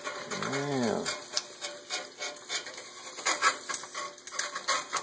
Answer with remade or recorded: recorded